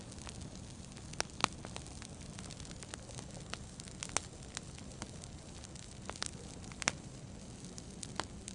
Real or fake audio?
real